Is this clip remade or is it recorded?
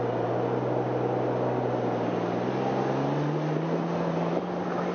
recorded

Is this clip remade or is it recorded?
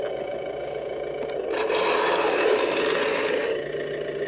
recorded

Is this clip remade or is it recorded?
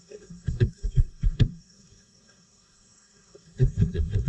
remade